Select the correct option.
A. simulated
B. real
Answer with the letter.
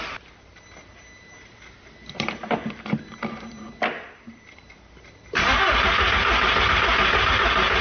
B